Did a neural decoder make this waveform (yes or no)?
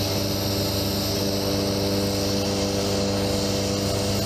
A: no